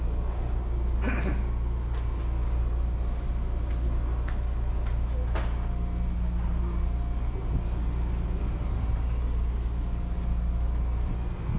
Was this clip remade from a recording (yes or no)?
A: no